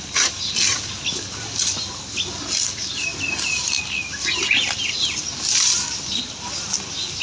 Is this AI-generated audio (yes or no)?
no